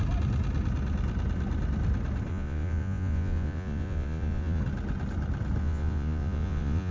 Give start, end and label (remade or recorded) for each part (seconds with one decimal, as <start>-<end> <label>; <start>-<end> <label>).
0.0-2.3 recorded; 2.3-4.6 remade; 4.6-5.6 recorded; 5.6-6.9 remade